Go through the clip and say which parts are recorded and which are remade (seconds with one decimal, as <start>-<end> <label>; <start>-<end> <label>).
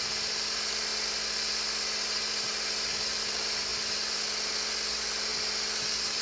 0.0-6.2 recorded